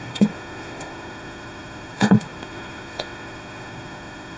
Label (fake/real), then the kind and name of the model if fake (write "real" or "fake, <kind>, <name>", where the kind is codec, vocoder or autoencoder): fake, autoencoder, DAC-VAE